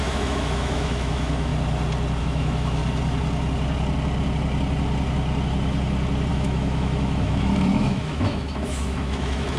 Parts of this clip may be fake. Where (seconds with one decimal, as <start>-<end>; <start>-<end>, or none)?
0.0-1.5; 2.2-2.8; 6.3-9.6